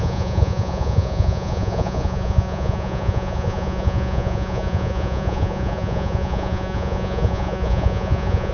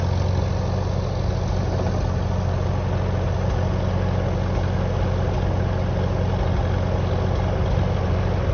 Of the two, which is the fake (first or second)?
first